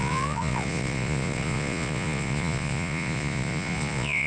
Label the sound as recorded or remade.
remade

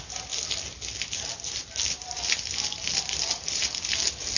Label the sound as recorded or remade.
recorded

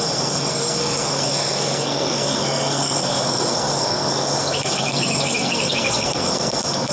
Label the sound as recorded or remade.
remade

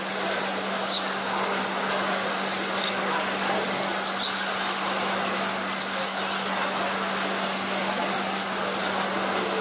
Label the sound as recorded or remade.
recorded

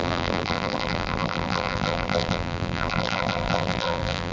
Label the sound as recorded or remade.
remade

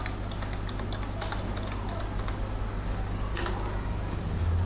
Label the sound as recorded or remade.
recorded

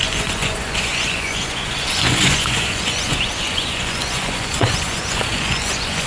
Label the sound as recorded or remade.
remade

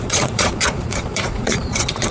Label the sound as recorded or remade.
remade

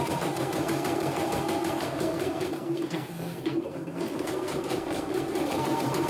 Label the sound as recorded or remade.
remade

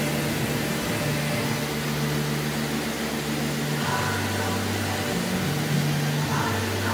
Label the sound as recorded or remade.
recorded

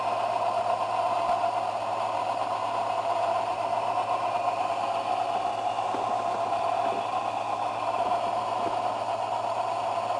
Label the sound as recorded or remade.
recorded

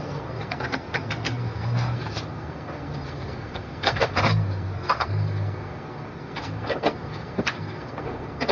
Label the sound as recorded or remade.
remade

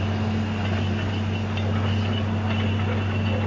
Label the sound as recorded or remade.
recorded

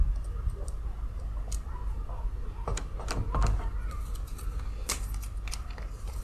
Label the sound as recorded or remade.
recorded